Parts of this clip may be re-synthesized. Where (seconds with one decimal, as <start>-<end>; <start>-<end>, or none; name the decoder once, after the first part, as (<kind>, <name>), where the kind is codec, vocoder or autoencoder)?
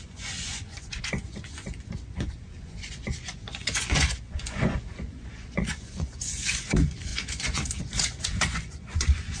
0.0-9.4 (vocoder, Vocos)